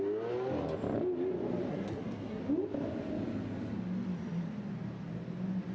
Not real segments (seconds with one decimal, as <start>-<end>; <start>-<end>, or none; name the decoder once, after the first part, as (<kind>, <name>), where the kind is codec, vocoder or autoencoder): 1.7-2.4 (codec, SNAC)